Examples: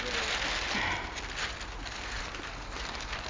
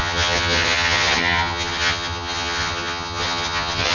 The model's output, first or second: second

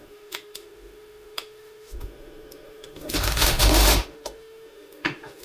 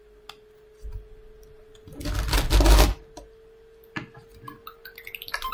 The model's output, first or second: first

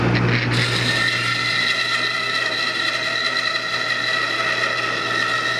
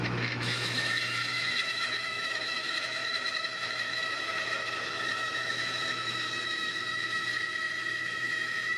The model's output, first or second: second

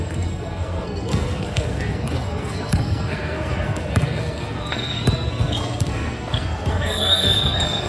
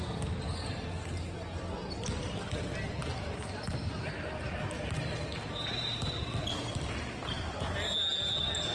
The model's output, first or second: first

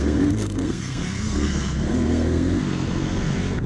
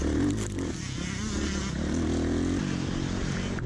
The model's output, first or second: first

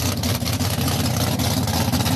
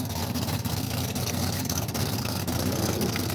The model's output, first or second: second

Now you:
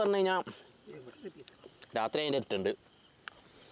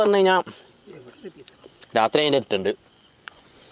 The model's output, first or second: second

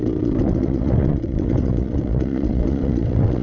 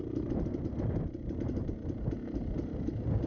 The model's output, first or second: first